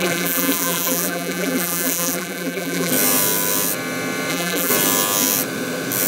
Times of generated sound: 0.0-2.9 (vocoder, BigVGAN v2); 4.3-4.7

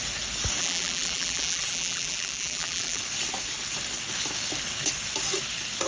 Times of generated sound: 0.6-3.0 (vocoder, BigVGAN v2)

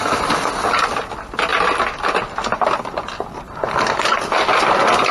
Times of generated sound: none

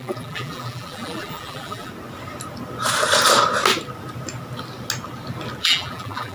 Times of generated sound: 0.0-1.9 (vocoder, BigVGAN v2); 5.6-6.3

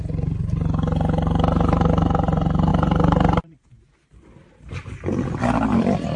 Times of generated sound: 2.7-3.7 (vocoder, BigVGAN v2)